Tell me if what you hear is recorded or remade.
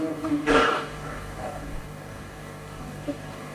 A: remade